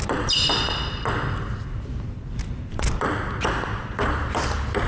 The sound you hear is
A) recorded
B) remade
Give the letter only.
A